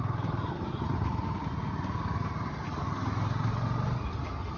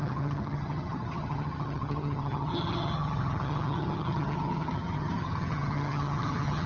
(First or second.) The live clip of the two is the first